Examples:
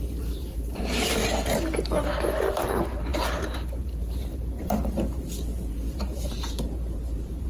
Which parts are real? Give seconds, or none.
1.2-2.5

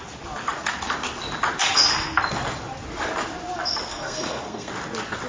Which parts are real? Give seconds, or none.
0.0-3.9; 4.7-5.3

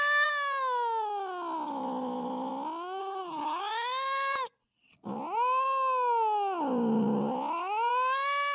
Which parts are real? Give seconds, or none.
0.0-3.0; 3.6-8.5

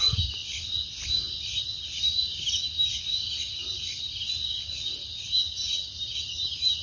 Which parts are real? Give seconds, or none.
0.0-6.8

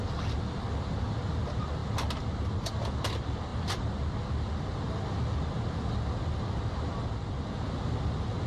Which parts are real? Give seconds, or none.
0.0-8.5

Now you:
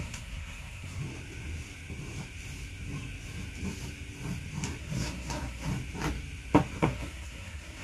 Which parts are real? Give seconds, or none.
1.0-4.8; 5.7-6.8

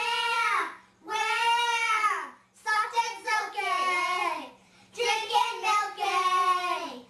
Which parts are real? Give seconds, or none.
0.0-4.2; 6.6-7.1